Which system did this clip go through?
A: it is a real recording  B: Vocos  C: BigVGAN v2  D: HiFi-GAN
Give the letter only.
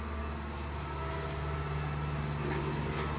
A